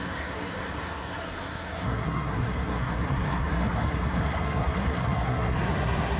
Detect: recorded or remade remade